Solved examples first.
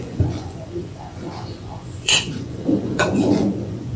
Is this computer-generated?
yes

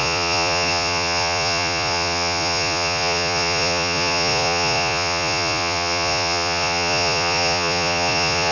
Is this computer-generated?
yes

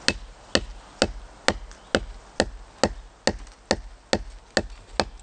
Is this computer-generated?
no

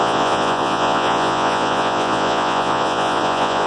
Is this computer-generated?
yes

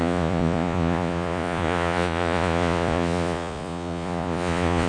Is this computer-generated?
yes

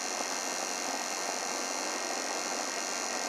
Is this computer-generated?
no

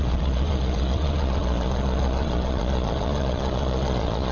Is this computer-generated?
yes